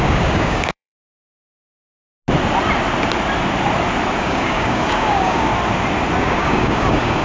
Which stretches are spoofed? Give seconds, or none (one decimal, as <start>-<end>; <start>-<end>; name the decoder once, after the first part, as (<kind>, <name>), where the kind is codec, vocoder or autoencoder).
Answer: 0.0-1.5 (codec, DAC); 4.2-5.5; 6.2-7.2